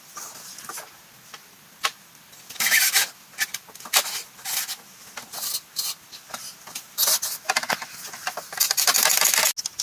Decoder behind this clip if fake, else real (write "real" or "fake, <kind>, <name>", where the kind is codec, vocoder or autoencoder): real